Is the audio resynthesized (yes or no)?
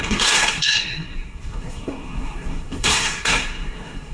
yes